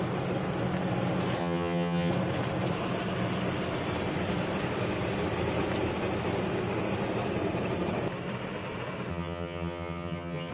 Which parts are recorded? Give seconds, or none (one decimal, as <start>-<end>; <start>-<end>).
0.0-1.4; 2.1-9.1